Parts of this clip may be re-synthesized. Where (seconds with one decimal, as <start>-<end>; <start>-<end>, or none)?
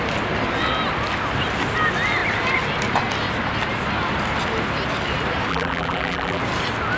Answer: 5.5-6.4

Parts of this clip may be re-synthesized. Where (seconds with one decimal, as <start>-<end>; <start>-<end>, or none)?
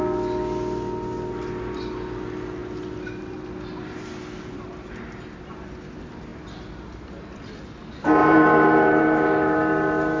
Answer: 8.2-10.2